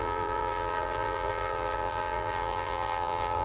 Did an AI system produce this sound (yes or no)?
yes